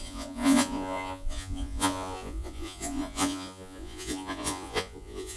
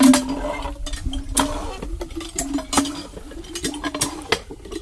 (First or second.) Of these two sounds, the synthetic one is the first